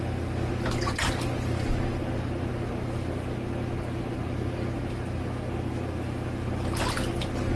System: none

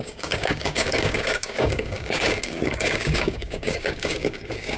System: codec, DAC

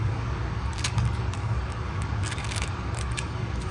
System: codec, DAC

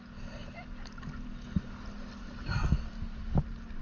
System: none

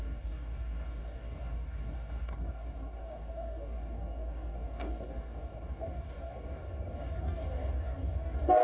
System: codec, DAC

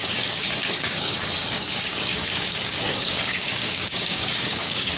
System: codec, DAC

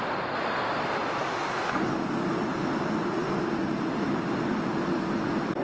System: none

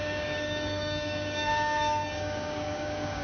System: codec, DAC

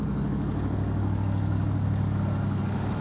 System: codec, DAC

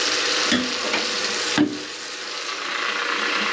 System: none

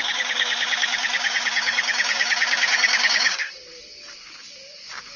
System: codec, DAC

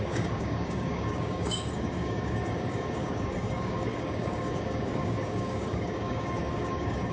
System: codec, DAC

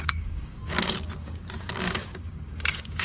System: codec, DAC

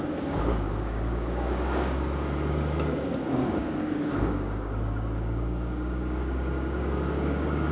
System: codec, DAC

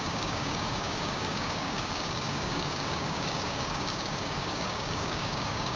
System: codec, DAC